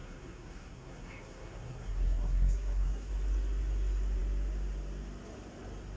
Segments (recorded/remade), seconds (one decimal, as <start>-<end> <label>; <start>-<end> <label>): 0.0-3.1 remade; 3.1-6.0 recorded